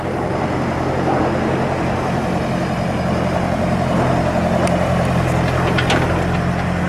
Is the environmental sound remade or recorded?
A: recorded